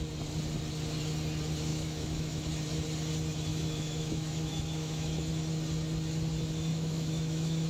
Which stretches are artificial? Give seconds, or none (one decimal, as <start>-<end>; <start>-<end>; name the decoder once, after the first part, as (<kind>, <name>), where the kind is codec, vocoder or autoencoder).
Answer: 1.7-2.5 (autoencoder, DAC-VAE); 3.5-5.3; 6.7-7.7